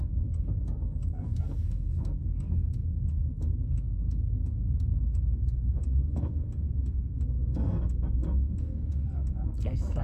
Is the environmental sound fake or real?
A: fake